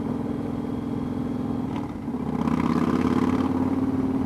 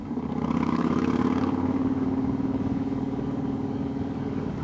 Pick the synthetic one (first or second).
second